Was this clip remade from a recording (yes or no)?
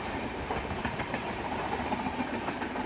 yes